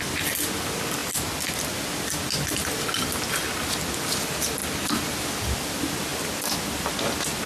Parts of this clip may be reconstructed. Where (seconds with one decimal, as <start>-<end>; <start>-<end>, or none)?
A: none